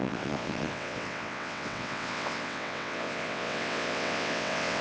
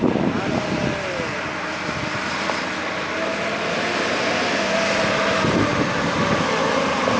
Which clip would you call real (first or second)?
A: second